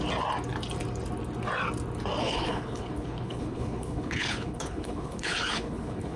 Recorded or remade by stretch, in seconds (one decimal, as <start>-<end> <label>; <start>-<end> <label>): 0.0-2.2 recorded; 2.2-6.2 remade